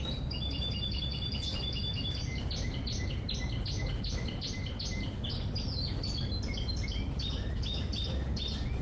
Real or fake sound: real